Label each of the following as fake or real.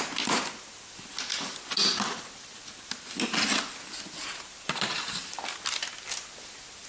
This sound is real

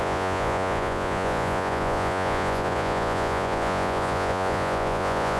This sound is fake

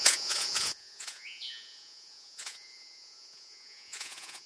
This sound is fake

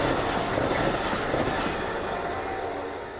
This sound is real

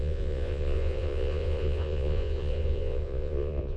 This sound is fake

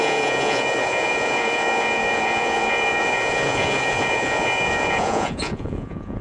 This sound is fake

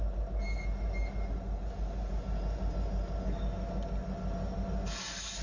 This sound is real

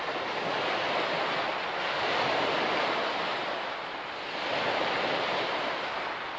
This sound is real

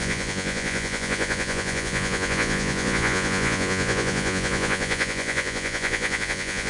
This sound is fake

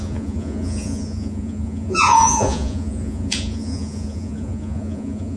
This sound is fake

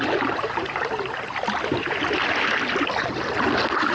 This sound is real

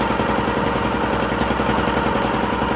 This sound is real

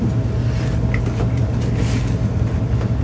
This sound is real